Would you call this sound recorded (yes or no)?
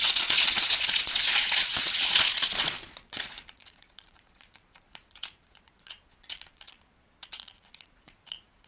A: no